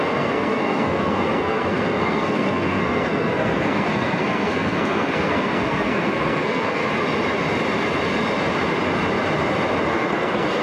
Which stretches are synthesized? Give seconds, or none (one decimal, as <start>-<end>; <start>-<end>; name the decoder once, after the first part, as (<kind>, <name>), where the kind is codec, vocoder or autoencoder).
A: 0.0-6.8 (codec, SNAC); 9.9-10.6